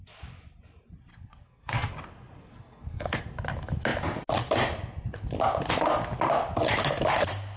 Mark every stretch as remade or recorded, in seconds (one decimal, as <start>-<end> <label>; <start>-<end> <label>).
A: 0.0-1.1 recorded; 1.1-1.9 remade; 1.9-2.5 recorded; 2.5-3.2 remade; 3.2-7.6 recorded